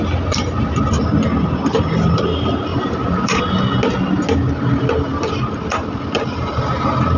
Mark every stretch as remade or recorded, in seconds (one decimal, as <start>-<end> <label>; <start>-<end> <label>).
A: 0.0-2.7 recorded; 2.7-3.4 remade; 3.4-7.2 recorded